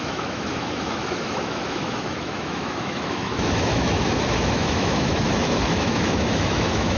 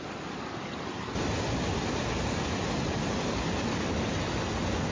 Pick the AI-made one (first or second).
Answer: first